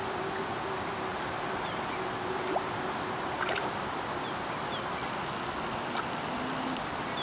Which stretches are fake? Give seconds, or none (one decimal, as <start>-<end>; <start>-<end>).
none